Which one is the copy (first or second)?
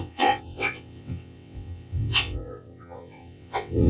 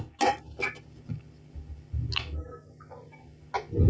first